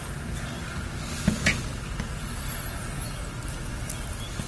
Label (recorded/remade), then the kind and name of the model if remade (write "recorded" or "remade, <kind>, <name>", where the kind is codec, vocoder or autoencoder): recorded